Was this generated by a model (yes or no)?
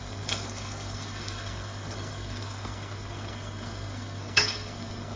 yes